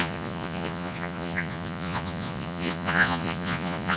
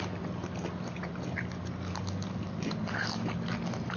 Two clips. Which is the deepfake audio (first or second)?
first